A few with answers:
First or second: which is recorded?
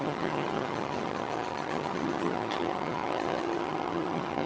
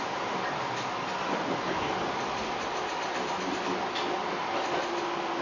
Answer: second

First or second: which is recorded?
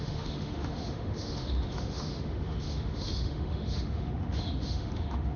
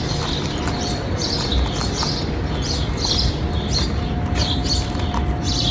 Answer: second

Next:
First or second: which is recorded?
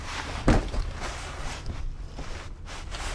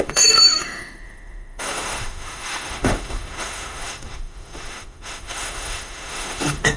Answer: first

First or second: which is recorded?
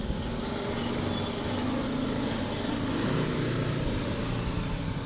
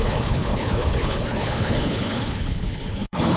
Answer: first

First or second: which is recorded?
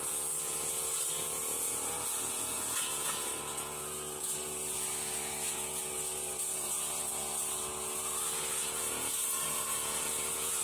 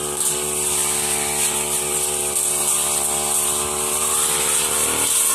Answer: second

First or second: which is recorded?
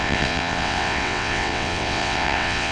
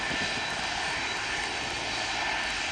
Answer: second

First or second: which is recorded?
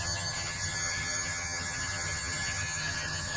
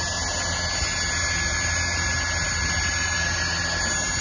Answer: second